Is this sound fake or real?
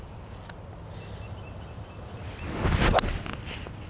real